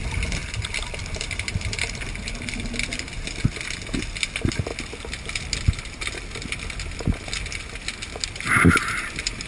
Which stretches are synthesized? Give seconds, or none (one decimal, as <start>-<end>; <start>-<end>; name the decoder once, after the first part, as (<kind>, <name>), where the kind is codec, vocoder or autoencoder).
0.4-1.0 (vocoder, BigVGAN v2)